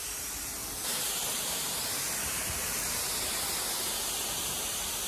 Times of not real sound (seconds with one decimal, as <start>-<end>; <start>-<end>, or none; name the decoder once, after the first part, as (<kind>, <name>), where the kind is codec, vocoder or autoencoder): none